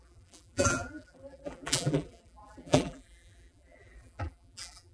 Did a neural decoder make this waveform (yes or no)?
yes